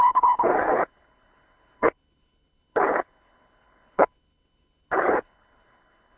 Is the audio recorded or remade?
remade